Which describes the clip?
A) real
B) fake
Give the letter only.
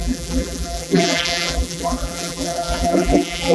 B